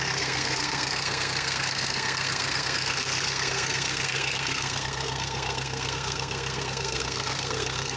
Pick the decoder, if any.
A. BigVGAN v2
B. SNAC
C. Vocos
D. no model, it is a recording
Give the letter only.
B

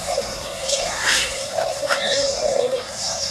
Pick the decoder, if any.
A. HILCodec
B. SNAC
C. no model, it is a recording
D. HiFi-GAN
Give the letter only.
B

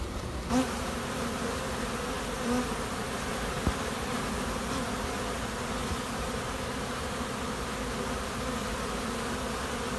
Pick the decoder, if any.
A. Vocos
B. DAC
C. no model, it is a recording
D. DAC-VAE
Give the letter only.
C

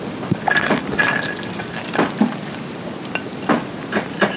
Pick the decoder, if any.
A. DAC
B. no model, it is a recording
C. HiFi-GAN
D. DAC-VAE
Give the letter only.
B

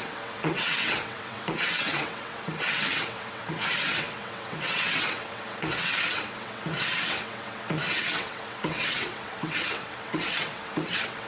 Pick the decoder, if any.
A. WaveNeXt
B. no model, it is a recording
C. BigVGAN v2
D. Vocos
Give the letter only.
A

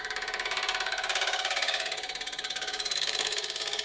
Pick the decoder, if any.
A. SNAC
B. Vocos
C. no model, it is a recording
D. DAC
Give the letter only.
D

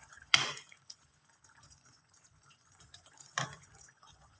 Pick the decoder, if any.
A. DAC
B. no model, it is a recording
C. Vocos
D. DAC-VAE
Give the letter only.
C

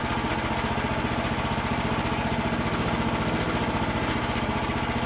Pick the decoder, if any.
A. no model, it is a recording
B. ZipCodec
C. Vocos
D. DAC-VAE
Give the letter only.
A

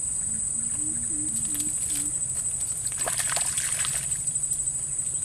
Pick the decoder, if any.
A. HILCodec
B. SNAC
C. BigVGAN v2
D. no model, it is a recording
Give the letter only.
D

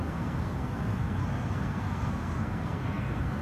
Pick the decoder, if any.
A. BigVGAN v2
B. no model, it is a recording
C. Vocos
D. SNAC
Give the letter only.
D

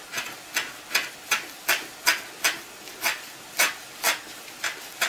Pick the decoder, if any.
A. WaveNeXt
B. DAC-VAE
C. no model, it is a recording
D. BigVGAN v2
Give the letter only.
C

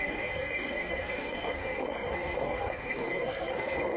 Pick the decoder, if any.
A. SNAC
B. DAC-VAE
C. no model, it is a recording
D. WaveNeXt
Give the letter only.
A